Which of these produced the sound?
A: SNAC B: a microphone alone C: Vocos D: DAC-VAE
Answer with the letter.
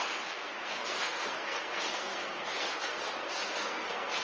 A